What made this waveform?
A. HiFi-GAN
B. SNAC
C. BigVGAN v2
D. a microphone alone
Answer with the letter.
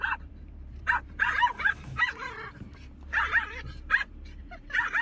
C